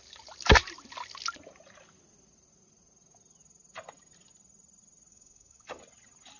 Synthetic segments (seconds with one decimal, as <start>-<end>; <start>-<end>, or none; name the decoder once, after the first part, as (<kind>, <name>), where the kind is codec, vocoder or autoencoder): 5.1-5.8 (codec, DAC)